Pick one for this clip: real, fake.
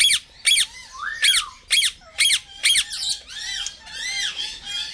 real